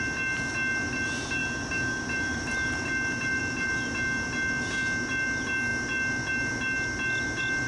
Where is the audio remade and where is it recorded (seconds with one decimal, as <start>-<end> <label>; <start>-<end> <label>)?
0.0-7.7 recorded